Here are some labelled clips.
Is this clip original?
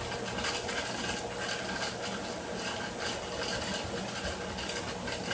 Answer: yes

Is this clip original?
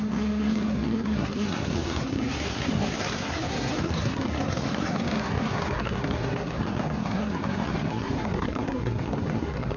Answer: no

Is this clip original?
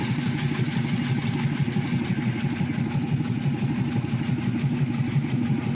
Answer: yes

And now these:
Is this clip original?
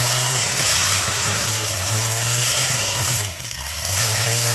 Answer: no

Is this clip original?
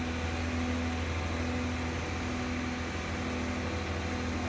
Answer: yes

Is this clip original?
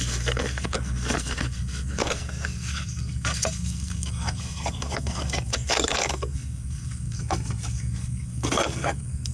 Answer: no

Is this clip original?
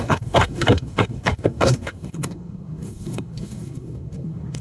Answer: no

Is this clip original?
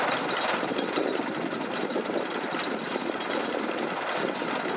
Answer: yes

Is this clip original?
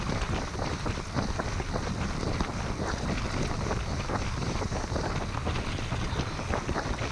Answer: yes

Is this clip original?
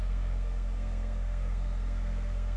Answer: no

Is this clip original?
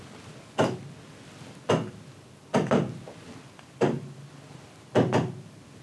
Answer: yes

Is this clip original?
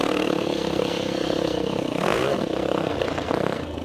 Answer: no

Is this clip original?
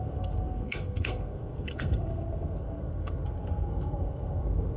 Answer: no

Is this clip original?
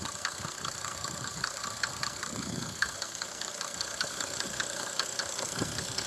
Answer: no